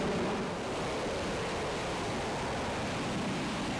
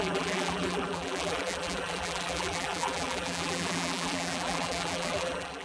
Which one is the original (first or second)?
first